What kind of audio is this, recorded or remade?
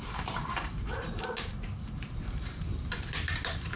remade